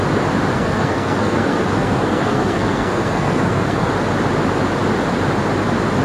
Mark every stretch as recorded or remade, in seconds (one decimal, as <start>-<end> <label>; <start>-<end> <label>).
0.0-0.5 recorded; 0.5-3.9 remade; 3.9-6.0 recorded